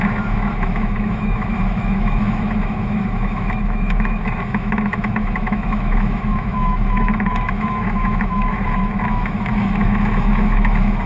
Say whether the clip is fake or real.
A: fake